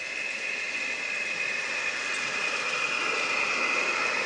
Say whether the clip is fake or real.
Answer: real